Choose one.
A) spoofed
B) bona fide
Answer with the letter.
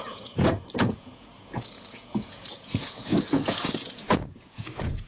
A